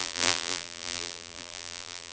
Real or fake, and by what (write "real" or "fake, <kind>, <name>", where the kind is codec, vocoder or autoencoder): fake, vocoder, BigVGAN v2